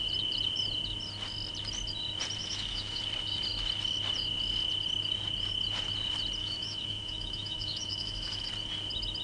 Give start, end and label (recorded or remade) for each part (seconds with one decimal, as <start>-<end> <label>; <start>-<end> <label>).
0.0-2.4 recorded; 2.4-3.0 remade; 3.0-6.4 recorded; 6.4-8.4 remade; 8.4-9.2 recorded